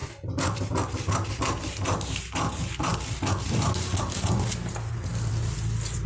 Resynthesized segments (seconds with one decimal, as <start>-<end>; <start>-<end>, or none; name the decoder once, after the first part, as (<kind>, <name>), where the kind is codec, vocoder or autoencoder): none